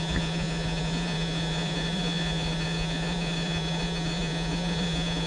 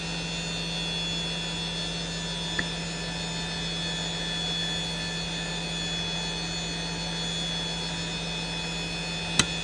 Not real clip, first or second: first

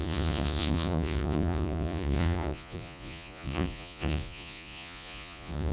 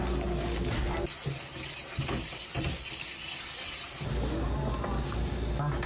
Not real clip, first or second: first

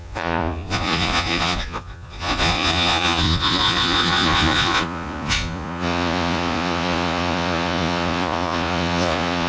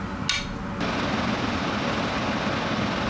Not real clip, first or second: first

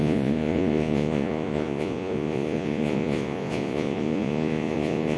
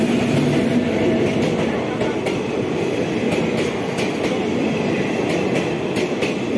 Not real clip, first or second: first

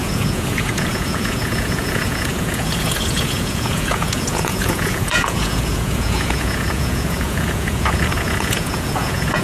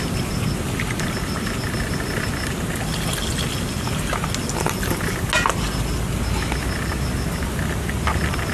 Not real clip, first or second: first